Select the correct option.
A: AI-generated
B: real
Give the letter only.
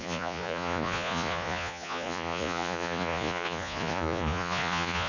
A